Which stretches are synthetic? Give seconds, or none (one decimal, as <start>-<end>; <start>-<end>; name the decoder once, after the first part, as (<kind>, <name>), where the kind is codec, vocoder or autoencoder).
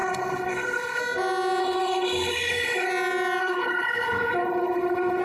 0.0-1.0 (codec, HILCodec); 1.6-2.9; 3.4-5.2